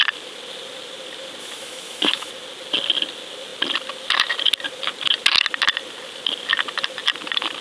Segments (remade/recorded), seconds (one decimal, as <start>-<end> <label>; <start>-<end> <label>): 0.0-1.4 recorded; 1.4-2.3 remade; 2.3-7.6 recorded